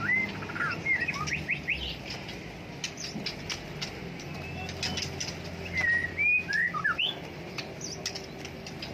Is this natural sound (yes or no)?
yes